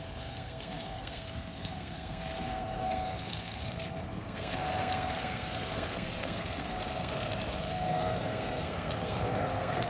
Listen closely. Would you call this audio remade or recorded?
remade